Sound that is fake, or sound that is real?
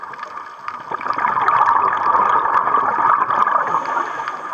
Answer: real